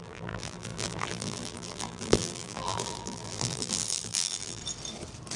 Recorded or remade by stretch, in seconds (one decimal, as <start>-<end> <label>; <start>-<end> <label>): 0.0-4.6 remade; 4.6-5.4 recorded